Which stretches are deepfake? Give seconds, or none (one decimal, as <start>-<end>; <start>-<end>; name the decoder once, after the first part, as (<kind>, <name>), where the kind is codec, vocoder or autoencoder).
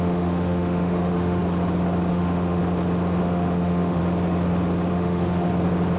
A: 0.0-1.4 (autoencoder, DAC-VAE); 2.1-2.6; 3.2-4.0; 4.9-5.5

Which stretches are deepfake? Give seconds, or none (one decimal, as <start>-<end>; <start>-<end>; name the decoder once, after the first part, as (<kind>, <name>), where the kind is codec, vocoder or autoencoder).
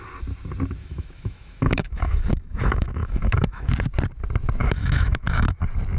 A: 0.8-3.7 (autoencoder, DAC-VAE); 4.6-5.6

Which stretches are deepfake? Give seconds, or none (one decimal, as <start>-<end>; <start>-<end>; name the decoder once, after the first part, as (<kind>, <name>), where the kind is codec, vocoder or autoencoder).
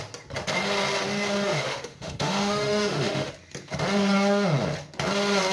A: 1.5-3.3 (autoencoder, DAC-VAE)